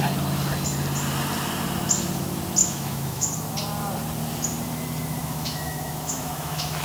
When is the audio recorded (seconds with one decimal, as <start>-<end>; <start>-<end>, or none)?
0.0-2.6; 3.3-5.2